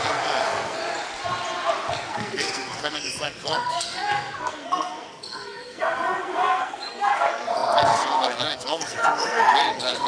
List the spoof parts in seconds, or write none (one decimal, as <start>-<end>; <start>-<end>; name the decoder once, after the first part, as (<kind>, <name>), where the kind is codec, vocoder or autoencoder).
0.0-0.8 (codec, SNAC); 1.9-10.1